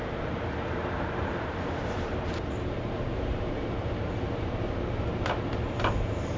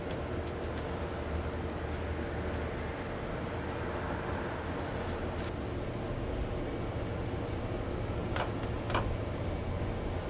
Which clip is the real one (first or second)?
second